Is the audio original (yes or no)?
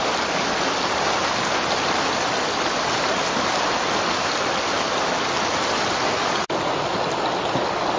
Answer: yes